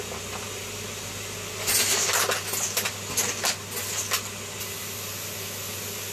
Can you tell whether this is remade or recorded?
recorded